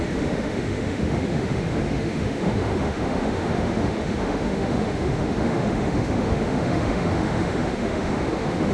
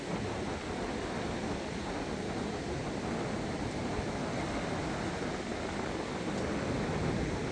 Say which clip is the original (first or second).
second